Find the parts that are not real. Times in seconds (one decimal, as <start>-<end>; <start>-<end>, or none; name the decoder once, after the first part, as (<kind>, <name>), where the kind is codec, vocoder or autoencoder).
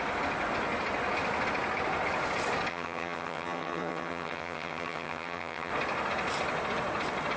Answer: 2.7-5.7 (vocoder, HiFi-GAN)